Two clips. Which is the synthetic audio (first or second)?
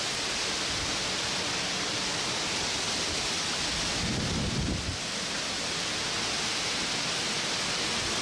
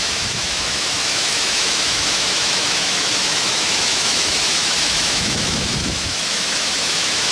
second